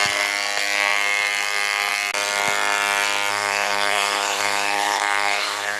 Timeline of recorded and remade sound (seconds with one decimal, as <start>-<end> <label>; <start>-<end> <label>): 0.0-3.3 recorded; 3.3-5.8 remade